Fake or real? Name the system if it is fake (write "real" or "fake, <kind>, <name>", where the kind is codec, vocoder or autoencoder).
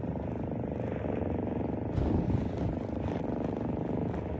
real